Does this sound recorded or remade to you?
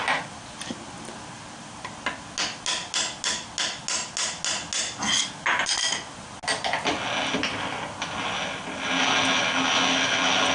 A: recorded